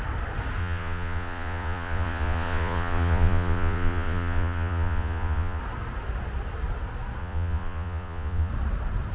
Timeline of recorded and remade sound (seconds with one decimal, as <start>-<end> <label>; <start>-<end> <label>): 0.0-0.6 recorded; 0.6-5.6 remade; 5.6-7.2 recorded; 7.2-8.5 remade; 8.5-9.1 recorded